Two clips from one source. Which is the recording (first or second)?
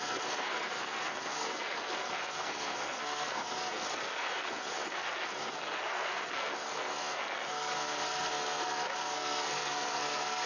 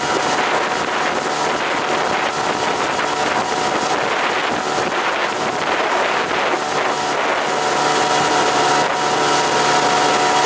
second